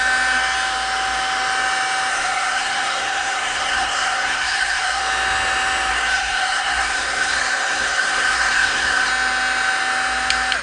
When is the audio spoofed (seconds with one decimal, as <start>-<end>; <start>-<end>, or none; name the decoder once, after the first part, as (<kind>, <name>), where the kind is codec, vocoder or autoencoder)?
2.1-5.0 (codec, SNAC); 5.9-9.1